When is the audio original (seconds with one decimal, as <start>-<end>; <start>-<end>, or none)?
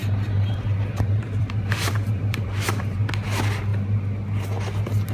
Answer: 3.1-5.1